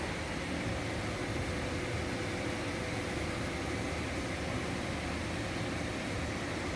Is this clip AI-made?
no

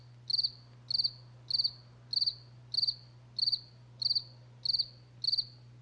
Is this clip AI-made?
no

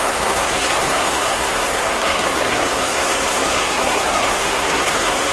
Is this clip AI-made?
yes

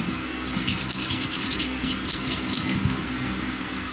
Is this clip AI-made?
yes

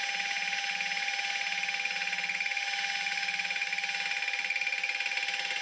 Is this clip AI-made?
no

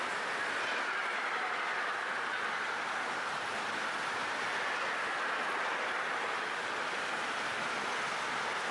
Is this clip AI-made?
no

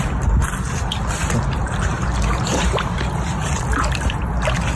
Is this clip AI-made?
no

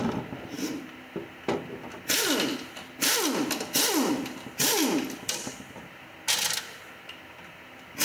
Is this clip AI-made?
no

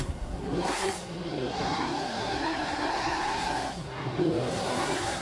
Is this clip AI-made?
yes